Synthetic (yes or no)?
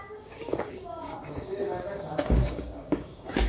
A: yes